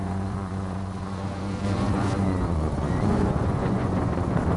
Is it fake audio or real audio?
fake